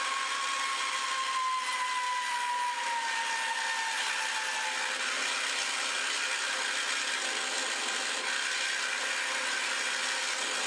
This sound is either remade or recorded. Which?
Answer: recorded